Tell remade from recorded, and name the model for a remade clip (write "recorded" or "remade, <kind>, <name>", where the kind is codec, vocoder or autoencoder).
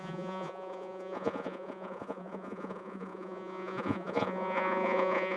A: remade, vocoder, Vocos